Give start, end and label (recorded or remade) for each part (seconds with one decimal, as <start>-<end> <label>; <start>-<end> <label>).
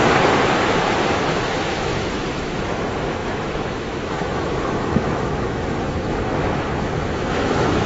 0.0-1.5 recorded; 1.5-7.9 remade